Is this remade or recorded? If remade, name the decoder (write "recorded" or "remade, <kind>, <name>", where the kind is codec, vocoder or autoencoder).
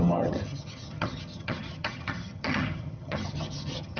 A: remade, vocoder, HiFi-GAN